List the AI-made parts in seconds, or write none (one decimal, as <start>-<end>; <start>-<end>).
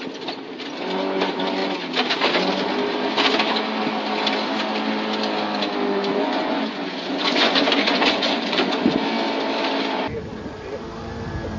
6.1-9.0